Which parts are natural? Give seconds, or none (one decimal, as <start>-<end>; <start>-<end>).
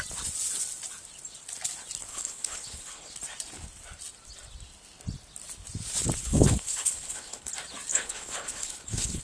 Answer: 0.0-2.1; 3.1-6.2; 7.5-7.9